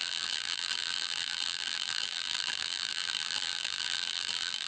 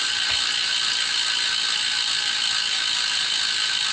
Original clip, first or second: second